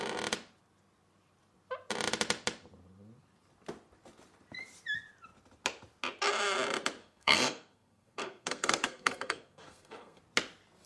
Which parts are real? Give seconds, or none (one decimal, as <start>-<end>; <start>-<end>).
0.0-7.0; 10.2-10.9